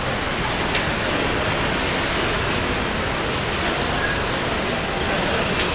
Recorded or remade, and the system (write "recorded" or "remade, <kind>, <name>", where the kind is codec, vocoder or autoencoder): recorded